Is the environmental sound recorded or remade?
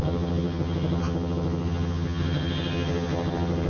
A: remade